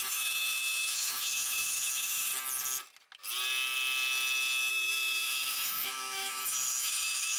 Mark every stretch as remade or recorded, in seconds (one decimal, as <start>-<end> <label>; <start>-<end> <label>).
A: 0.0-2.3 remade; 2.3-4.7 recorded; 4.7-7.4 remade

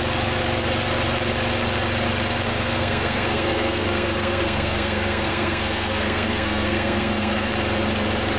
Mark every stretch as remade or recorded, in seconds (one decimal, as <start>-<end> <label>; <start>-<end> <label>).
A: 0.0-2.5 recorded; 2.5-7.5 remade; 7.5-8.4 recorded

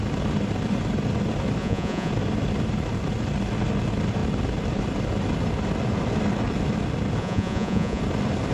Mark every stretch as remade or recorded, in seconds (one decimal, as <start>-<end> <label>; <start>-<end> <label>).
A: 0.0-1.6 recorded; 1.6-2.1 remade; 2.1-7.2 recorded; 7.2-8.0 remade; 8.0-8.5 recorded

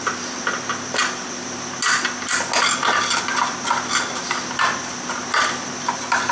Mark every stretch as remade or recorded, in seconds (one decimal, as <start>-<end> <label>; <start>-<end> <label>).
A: 0.0-6.3 recorded